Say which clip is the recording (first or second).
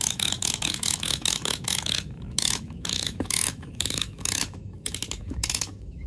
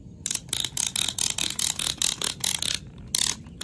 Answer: second